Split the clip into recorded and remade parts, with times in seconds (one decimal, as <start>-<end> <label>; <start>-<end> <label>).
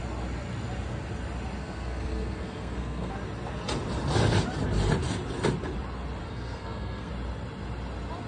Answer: 0.0-1.6 recorded; 1.6-3.1 remade; 3.1-6.2 recorded; 6.2-7.1 remade; 7.1-8.3 recorded